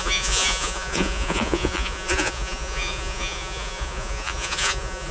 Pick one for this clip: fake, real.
fake